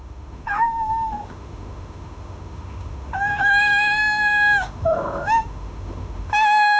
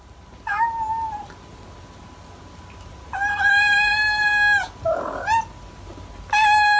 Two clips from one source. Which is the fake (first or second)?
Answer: first